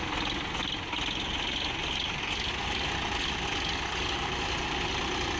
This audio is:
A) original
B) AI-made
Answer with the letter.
A